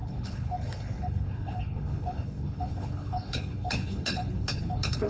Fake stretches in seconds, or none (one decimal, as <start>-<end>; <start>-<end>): 0.0-5.1